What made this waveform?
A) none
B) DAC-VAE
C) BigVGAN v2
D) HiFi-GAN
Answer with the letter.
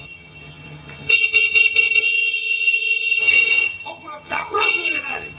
D